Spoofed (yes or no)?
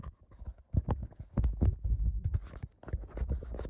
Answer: yes